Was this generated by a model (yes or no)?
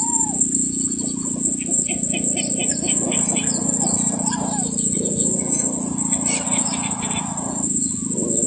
no